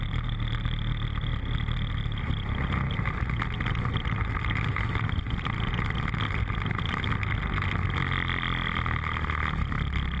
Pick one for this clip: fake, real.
real